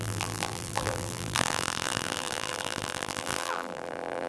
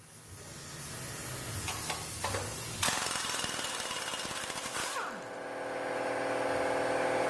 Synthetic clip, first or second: first